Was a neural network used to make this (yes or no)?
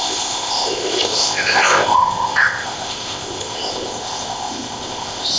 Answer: yes